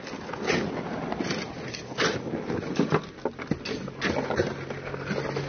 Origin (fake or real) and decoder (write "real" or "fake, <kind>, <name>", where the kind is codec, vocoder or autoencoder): real